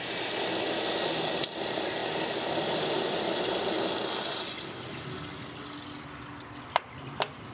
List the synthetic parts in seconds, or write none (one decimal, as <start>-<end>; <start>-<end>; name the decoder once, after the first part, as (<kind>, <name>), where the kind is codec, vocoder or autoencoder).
none